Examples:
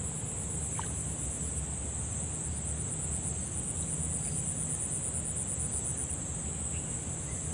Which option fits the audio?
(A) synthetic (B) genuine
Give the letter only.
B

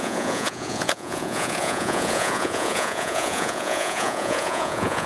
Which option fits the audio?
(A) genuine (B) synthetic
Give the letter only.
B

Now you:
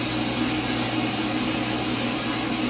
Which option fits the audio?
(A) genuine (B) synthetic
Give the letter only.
A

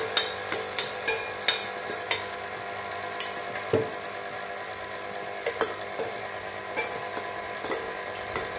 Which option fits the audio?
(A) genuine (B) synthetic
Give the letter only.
A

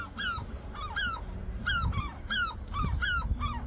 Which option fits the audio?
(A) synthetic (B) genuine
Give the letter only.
A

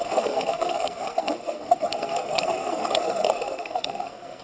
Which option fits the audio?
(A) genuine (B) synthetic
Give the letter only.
B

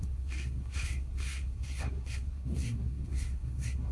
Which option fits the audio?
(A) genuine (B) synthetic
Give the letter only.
B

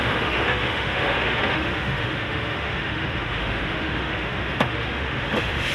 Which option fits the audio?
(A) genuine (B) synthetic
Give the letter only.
B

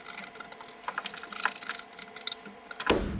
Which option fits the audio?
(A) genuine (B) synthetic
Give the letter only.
A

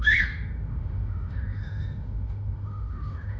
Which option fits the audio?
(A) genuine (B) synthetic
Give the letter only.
B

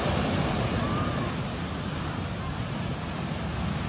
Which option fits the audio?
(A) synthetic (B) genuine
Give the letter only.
B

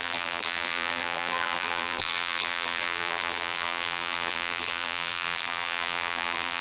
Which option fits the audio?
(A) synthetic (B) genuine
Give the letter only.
A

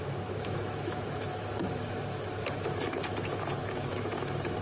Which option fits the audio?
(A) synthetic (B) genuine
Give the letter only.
A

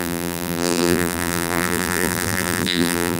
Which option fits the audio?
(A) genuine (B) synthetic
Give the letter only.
B